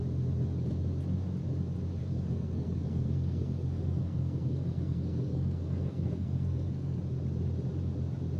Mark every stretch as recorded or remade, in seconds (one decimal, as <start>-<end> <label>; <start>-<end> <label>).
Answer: 0.0-2.0 recorded; 2.0-7.0 remade; 7.0-8.4 recorded